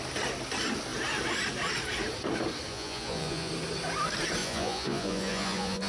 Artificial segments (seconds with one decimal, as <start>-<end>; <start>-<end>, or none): 2.7-3.5; 4.4-5.9